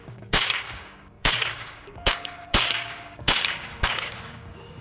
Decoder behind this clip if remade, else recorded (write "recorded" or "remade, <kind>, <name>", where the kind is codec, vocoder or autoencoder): remade, codec, DAC